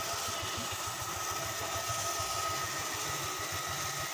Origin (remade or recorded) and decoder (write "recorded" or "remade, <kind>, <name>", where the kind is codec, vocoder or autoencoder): recorded